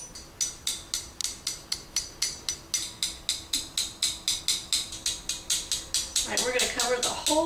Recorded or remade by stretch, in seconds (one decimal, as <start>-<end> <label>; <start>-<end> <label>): 0.0-7.5 recorded